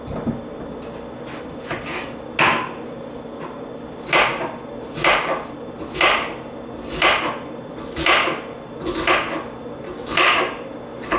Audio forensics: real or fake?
real